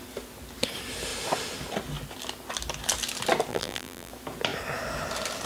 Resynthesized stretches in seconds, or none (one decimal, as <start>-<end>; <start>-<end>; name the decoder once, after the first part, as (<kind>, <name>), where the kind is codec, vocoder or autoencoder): 3.5-4.1 (vocoder, BigVGAN v2)